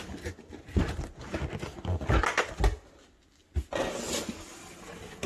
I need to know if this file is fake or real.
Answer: real